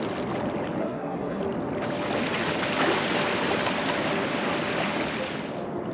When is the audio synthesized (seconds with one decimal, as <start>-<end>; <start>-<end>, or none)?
0.8-1.4